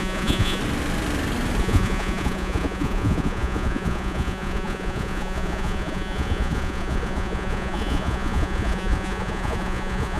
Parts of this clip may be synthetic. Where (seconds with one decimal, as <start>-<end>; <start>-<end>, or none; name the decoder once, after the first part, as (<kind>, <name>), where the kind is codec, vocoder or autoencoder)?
0.0-0.6 (vocoder, Vocos); 1.6-10.2